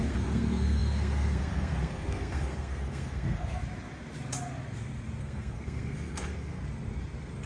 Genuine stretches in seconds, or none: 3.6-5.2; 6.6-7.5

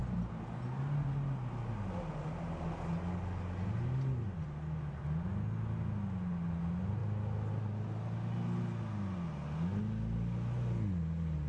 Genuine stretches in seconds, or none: 0.0-11.5

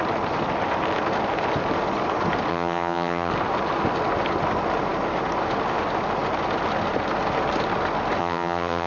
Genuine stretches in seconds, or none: 0.0-2.5; 3.3-8.2

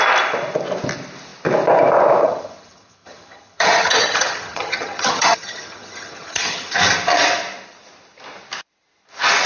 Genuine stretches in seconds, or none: 0.0-2.2; 6.7-9.5

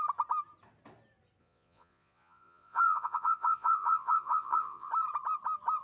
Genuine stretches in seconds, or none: 0.0-1.4; 4.9-5.8

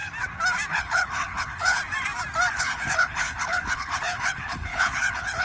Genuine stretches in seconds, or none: 0.0-0.7; 1.8-2.5